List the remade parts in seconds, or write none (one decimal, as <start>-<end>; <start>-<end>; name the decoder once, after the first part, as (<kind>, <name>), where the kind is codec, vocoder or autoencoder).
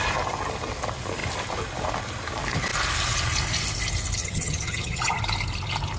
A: 4.2-5.2 (vocoder, HiFi-GAN)